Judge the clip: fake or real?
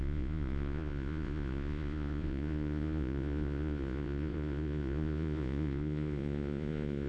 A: fake